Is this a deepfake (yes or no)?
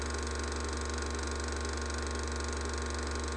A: no